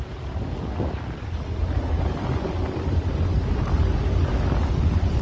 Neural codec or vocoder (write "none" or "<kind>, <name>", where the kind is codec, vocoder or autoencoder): none